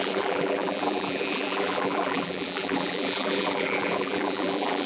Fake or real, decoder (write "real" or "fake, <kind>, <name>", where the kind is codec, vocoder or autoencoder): fake, vocoder, BigVGAN v2